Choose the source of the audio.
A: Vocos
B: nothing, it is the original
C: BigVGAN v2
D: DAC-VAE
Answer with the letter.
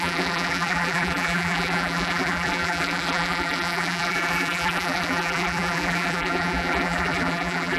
C